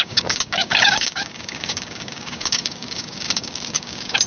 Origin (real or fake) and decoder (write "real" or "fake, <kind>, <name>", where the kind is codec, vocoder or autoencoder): fake, codec, DAC